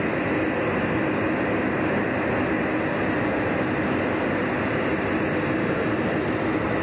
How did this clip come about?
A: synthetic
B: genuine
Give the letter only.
B